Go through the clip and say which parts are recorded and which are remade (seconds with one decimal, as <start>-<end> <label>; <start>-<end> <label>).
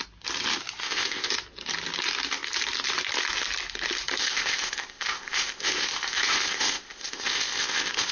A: 0.0-0.8 recorded; 0.8-1.3 remade; 1.3-4.2 recorded; 4.2-8.1 remade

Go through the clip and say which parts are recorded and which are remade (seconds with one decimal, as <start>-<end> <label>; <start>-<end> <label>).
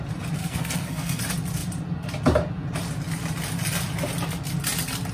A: 0.0-0.4 recorded; 0.4-1.2 remade; 1.2-5.1 recorded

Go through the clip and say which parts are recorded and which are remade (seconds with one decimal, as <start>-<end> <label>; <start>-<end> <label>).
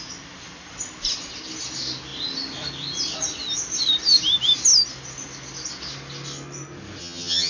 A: 0.0-7.0 recorded; 7.0-7.5 remade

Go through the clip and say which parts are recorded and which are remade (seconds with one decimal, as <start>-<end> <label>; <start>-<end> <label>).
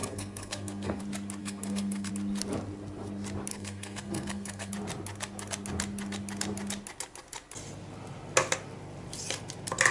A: 0.0-1.0 remade; 1.0-1.4 recorded; 1.4-2.1 remade; 2.1-3.5 recorded; 3.5-4.7 remade; 4.7-9.9 recorded